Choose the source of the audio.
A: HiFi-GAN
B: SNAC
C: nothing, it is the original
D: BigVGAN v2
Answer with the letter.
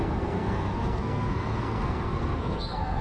B